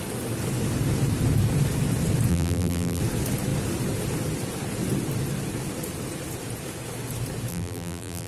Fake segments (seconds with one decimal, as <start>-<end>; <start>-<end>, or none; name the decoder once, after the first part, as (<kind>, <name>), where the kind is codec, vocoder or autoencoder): 2.3-3.0 (vocoder, BigVGAN v2); 7.5-8.3